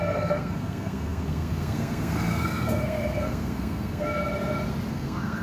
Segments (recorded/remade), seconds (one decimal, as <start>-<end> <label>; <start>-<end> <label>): 0.0-4.2 remade; 4.2-4.9 recorded; 4.9-5.4 remade